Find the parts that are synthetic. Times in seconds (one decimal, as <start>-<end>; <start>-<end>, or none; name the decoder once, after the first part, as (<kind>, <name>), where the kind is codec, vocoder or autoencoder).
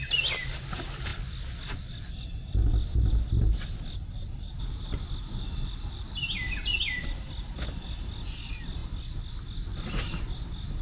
none